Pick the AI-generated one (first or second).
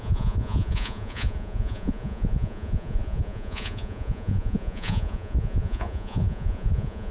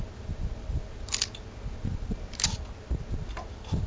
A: first